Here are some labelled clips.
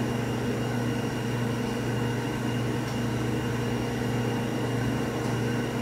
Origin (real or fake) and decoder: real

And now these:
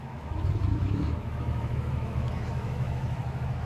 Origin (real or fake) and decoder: fake, autoencoder, DAC-VAE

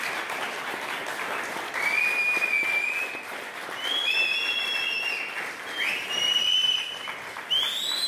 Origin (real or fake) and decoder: real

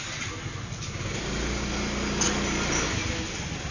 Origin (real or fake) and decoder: real